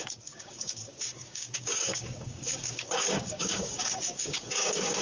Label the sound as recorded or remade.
remade